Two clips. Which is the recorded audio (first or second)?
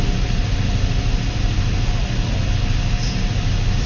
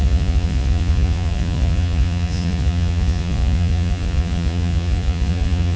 first